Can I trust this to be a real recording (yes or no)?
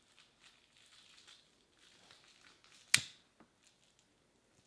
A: yes